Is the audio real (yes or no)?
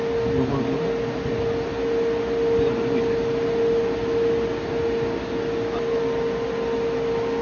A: yes